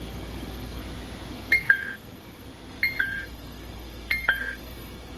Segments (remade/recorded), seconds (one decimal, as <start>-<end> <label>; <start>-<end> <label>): 0.0-0.8 remade; 0.8-1.3 recorded; 1.3-2.5 remade; 2.5-3.0 recorded; 3.0-5.2 remade